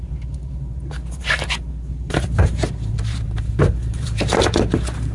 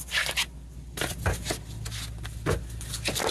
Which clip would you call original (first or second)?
second